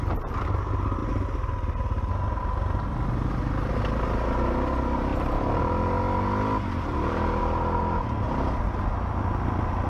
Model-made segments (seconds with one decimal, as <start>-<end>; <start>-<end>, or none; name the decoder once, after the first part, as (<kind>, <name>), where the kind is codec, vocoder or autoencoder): 5.1-7.4 (vocoder, BigVGAN v2)